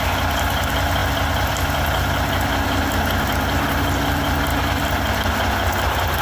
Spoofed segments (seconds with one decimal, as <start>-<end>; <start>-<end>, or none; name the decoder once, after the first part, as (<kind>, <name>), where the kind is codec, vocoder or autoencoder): none